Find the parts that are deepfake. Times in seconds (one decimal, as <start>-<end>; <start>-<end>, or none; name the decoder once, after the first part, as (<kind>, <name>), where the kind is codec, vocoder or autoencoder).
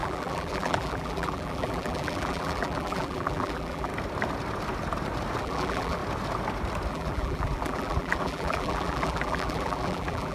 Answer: 0.0-3.9 (vocoder, BigVGAN v2); 5.4-6.0; 6.9-10.3